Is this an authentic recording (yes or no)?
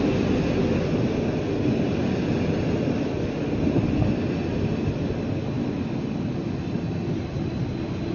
yes